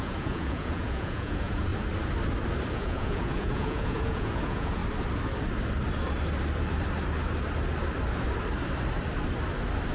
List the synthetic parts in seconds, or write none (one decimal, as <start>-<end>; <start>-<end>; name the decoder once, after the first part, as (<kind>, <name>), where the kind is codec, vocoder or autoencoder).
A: 0.0-1.7 (vocoder, Vocos); 2.7-4.8